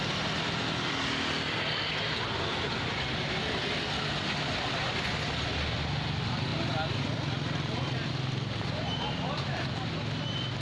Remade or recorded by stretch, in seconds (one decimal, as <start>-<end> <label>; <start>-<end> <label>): 0.0-10.6 recorded